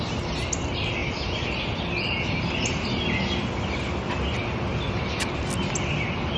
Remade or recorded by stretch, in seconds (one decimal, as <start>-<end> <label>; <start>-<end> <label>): 0.0-6.4 recorded